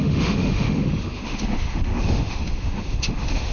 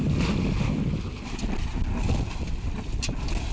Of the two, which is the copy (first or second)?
first